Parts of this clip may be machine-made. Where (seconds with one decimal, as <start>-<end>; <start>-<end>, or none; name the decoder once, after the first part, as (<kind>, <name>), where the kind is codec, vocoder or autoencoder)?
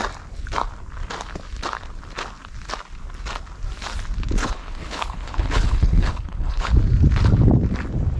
4.4-6.7 (codec, HILCodec)